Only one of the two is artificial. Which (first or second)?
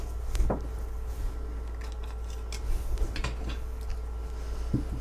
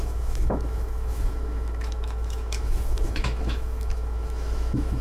second